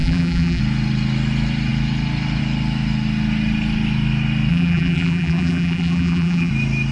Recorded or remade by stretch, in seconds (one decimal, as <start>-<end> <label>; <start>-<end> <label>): 0.0-0.6 remade; 0.6-4.5 recorded; 4.5-6.5 remade; 6.5-6.9 recorded